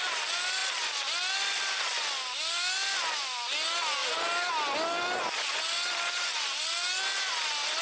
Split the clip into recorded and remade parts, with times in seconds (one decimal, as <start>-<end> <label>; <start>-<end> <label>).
0.0-7.8 recorded